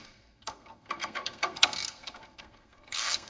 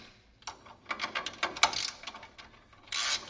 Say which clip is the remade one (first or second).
first